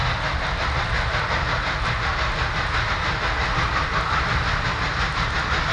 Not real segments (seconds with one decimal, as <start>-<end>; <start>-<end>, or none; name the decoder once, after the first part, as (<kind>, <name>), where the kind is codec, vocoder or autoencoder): none